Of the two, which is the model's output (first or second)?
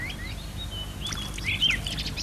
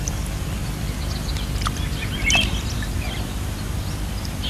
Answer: second